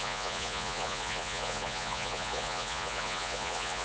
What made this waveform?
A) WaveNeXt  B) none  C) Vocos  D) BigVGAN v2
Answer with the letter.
C